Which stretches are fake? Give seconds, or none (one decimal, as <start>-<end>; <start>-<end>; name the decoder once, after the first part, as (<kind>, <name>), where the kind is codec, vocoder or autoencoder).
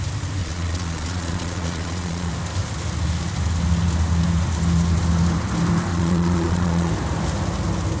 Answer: 0.4-2.3 (vocoder, Vocos); 5.9-6.9